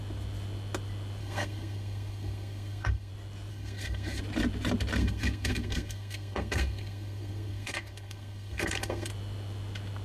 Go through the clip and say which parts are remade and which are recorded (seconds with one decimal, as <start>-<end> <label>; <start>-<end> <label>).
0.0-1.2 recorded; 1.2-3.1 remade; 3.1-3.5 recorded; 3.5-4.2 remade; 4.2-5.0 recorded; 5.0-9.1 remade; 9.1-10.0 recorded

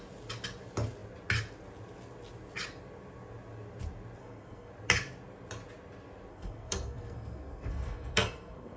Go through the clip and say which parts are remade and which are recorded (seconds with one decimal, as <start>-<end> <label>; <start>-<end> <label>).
0.0-4.2 recorded; 4.2-4.7 remade; 4.7-6.3 recorded; 6.3-8.8 remade

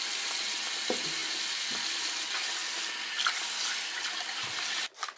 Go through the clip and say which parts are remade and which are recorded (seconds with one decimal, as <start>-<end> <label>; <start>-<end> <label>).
0.0-5.2 recorded

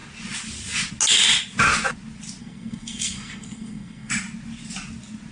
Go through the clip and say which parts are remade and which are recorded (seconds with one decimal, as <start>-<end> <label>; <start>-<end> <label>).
0.0-2.4 recorded; 2.4-4.1 remade; 4.1-5.3 recorded

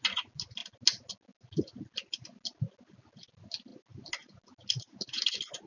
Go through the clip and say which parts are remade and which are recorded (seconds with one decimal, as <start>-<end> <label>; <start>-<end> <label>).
0.0-5.7 recorded